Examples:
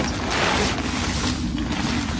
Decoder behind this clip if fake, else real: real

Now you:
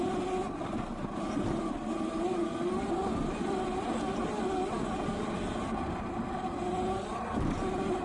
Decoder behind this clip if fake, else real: real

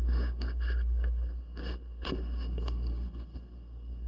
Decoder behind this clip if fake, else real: fake, codec, SNAC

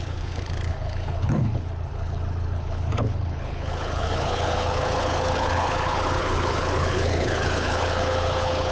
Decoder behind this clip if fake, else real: fake, codec, HILCodec